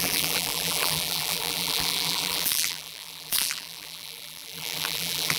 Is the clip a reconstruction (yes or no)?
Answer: yes